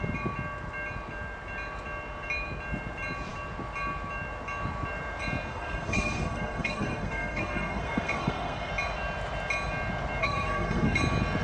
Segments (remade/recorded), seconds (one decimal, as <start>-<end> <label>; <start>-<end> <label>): 0.0-5.5 recorded; 5.5-8.7 remade; 8.7-10.2 recorded; 10.2-11.0 remade; 11.0-11.4 recorded